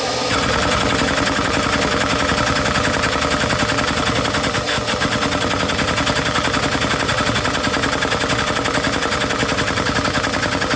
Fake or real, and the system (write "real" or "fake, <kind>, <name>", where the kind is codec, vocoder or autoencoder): real